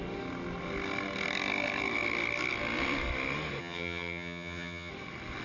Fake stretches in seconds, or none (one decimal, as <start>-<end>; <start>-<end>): 3.6-4.9